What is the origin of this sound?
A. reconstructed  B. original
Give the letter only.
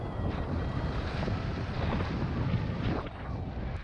B